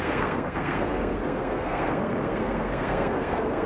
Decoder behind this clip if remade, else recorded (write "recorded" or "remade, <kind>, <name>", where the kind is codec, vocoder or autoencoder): remade, codec, SNAC